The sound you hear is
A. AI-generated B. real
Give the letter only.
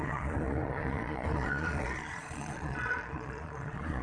A